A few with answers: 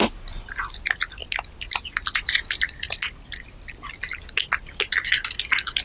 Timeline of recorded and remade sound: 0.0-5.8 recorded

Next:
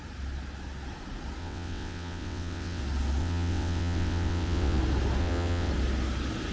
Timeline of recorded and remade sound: 0.0-1.4 recorded; 1.4-2.8 remade; 2.8-3.2 recorded; 3.2-4.8 remade; 4.8-5.2 recorded; 5.2-5.7 remade; 5.7-6.5 recorded

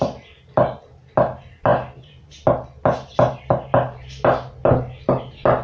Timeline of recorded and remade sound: 0.0-5.6 recorded

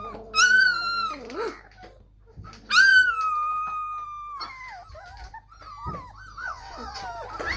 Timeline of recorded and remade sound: 0.0-6.4 recorded; 6.4-7.0 remade; 7.0-7.6 recorded

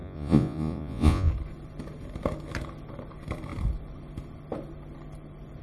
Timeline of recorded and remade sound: 0.0-1.3 remade; 1.3-5.6 recorded